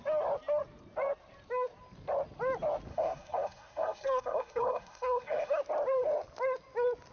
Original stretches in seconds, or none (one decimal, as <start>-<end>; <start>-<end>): 0.0-2.9; 5.6-7.1

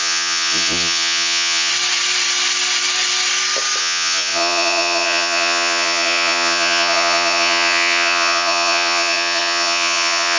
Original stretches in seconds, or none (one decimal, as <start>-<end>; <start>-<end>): 1.7-3.8

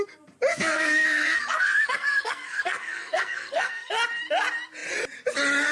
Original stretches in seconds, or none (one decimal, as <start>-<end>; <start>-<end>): 0.0-0.5; 3.9-5.7

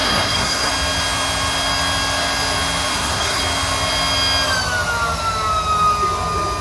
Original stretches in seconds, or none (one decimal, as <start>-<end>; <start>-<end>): 0.7-2.9; 3.4-6.6